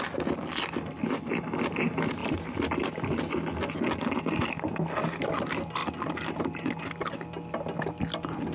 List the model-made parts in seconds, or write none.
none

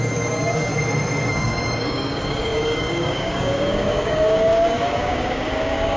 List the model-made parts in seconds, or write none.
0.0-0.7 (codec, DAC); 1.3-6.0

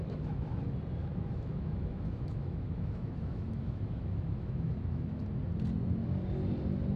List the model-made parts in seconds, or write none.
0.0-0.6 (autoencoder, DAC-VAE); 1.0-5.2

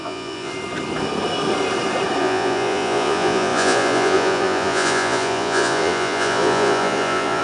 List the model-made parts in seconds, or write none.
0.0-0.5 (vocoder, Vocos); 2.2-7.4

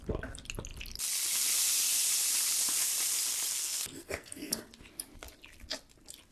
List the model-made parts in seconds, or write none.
3.5-4.7 (codec, SNAC)

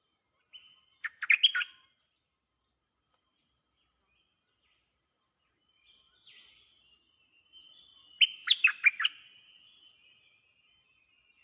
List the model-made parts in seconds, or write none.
none

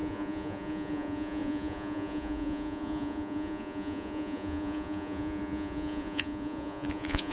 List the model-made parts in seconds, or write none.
0.0-7.3 (vocoder, Vocos)